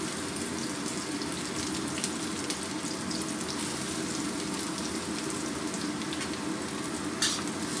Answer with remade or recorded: recorded